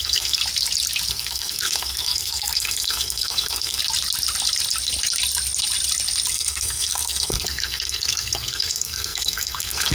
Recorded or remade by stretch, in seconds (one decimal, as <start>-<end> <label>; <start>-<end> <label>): 0.0-0.4 remade; 0.4-1.1 recorded; 1.1-3.8 remade; 3.8-6.3 recorded; 6.3-9.9 remade